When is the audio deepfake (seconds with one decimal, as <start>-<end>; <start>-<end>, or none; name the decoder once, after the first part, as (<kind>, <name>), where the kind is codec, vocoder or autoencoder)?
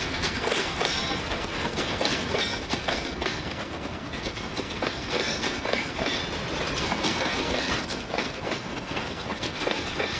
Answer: 0.0-6.2 (codec, SNAC); 6.8-10.2